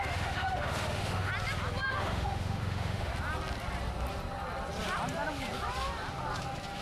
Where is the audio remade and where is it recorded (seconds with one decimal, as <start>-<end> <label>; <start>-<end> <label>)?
0.0-1.3 remade; 1.3-1.9 recorded; 1.9-3.1 remade; 3.1-6.8 recorded